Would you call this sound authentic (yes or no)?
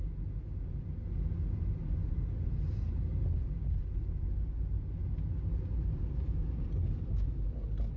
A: yes